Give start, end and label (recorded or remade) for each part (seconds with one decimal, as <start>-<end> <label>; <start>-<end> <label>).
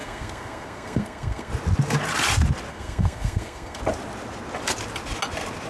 0.0-1.5 remade; 1.5-2.7 recorded; 2.7-3.8 remade; 3.8-5.7 recorded